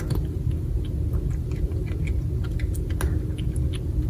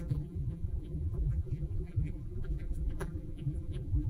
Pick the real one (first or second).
first